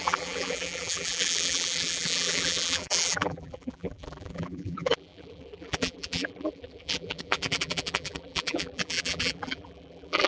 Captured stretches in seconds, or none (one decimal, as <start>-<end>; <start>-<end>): none

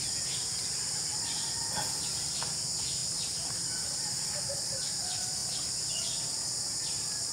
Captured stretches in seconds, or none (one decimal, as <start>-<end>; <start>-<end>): 5.4-6.8

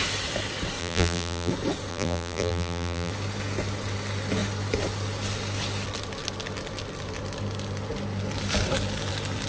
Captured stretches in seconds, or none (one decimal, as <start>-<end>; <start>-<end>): 0.0-0.8; 1.5-1.9; 3.1-9.5

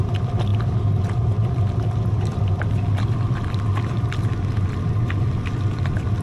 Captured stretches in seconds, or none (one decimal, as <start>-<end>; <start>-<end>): 0.0-6.2

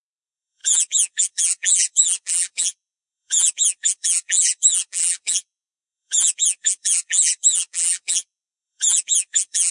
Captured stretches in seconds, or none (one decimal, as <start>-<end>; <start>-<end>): none

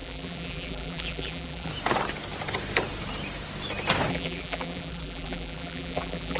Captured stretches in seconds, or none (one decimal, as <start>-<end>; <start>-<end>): 1.7-4.1

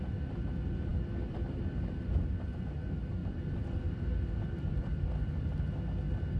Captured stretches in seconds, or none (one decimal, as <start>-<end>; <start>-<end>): 0.0-0.9; 1.6-3.2; 5.1-6.4

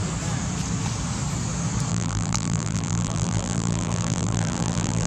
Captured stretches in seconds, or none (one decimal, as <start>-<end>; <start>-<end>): 0.0-1.9